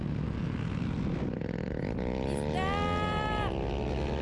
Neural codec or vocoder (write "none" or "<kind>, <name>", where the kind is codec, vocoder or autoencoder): none